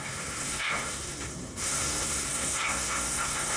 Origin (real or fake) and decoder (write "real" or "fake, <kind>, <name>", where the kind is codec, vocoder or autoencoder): fake, codec, SNAC